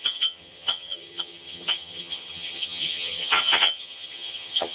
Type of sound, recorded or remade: remade